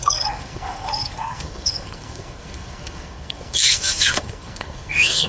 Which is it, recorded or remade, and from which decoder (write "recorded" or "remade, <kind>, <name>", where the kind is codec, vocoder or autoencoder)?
remade, codec, SNAC